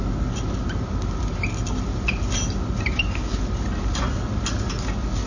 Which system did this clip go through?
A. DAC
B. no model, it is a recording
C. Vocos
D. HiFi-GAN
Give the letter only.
B